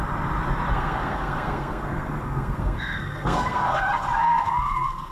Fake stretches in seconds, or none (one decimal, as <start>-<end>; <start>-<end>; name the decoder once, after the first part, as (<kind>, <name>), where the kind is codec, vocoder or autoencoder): 0.7-3.8 (codec, SNAC); 4.2-5.1